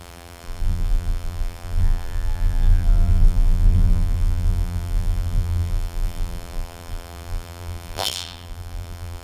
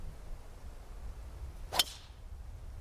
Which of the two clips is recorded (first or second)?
second